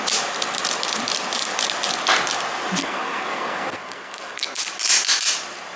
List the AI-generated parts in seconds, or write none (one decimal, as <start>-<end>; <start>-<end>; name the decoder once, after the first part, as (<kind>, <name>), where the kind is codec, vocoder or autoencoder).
2.8-4.6 (codec, SNAC)